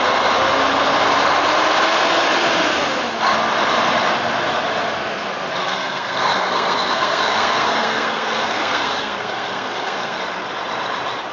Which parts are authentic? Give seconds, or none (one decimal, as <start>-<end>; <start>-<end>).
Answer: 0.0-5.6; 10.2-11.3